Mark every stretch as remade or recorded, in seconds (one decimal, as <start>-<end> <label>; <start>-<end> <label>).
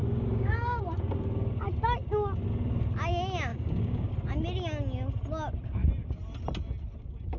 0.0-0.8 remade; 0.8-3.5 recorded; 3.5-4.1 remade; 4.1-7.4 recorded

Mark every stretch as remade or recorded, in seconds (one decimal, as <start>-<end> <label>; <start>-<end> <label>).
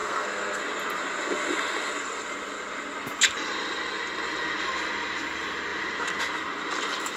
0.0-0.6 remade; 0.6-7.2 recorded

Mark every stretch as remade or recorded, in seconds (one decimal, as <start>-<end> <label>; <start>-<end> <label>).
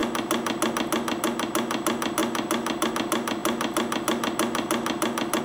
0.0-5.4 recorded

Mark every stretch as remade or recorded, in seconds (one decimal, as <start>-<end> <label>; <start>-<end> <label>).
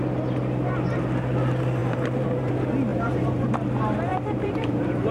0.0-1.8 recorded; 1.8-2.5 remade; 2.5-2.9 recorded; 2.9-3.5 remade; 3.5-4.1 recorded; 4.1-5.1 remade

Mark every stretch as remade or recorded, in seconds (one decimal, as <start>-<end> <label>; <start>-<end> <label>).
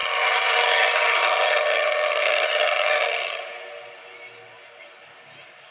0.0-3.4 remade; 3.4-5.7 recorded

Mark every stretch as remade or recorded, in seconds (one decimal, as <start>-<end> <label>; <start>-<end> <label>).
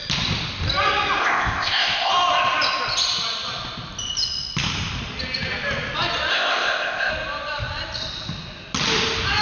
0.0-1.2 recorded; 1.2-2.1 remade; 2.1-6.3 recorded; 6.3-7.1 remade; 7.1-9.4 recorded